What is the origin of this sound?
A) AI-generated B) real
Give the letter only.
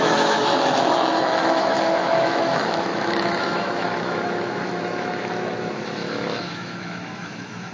A